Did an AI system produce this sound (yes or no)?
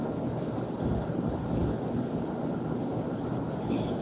no